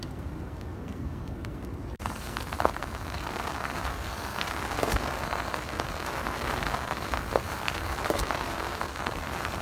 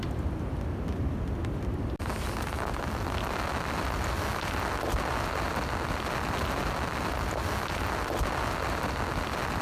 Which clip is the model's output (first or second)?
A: first